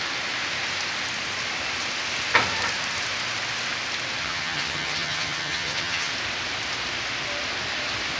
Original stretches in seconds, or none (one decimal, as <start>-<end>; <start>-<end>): 0.0-4.2; 6.1-8.2